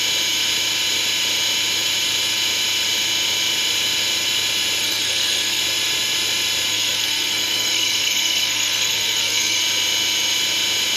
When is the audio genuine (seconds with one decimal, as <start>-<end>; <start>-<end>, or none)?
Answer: 0.0-4.8; 5.6-6.7; 9.6-11.0